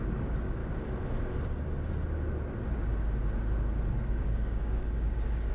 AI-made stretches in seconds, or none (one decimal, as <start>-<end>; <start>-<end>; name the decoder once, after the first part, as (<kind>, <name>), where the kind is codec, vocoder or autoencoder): 0.0-0.6 (codec, DAC); 3.9-5.5